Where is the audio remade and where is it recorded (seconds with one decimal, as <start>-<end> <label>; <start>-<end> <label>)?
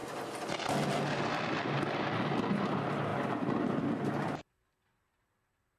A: 0.0-5.8 recorded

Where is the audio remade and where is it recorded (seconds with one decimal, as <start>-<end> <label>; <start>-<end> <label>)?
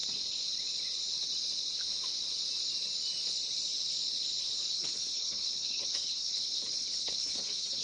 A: 0.0-4.7 recorded; 4.7-7.8 remade